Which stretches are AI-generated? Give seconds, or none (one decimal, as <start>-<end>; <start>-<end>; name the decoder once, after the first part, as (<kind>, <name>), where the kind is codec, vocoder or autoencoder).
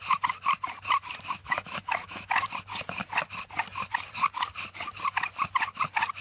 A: 1.4-2.5 (autoencoder, DAC-VAE)